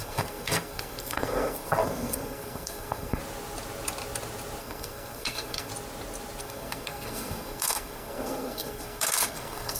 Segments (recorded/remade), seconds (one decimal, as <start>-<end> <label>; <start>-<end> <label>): 0.0-3.2 remade; 3.2-4.6 recorded; 4.6-5.7 remade; 5.7-6.4 recorded; 6.4-9.8 remade